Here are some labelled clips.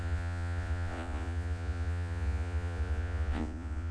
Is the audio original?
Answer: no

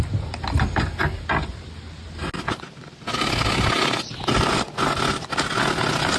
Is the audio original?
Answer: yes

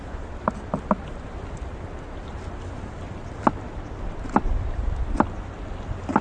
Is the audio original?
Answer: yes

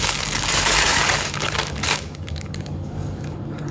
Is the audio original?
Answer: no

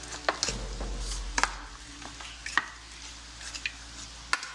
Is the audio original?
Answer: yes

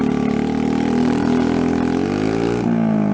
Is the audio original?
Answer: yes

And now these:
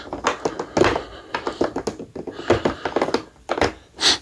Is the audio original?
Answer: yes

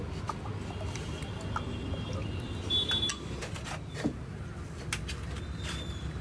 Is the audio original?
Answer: yes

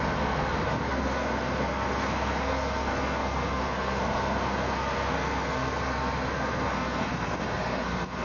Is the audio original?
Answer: no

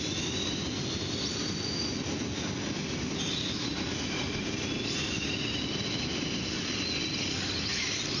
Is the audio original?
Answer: yes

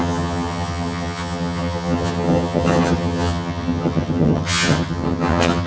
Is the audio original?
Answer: no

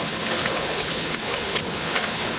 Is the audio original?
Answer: no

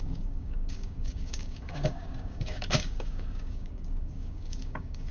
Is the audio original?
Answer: no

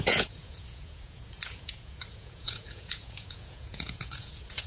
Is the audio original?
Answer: no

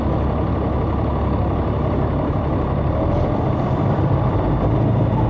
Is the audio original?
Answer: yes